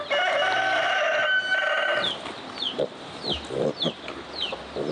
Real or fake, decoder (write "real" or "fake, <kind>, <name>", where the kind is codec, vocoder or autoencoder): real